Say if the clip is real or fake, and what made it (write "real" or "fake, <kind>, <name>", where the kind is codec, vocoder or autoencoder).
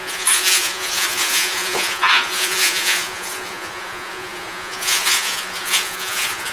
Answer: fake, vocoder, Vocos